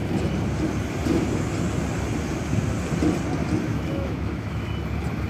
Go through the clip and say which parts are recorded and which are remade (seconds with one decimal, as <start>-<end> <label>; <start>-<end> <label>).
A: 0.0-3.7 recorded; 3.7-4.7 remade; 4.7-5.3 recorded